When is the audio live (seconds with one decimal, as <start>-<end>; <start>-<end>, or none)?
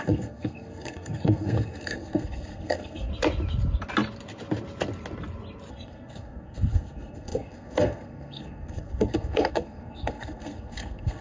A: 3.1-5.7